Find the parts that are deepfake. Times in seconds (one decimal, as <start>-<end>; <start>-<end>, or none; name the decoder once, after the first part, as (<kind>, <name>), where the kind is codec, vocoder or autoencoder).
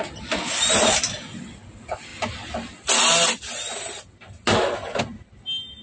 none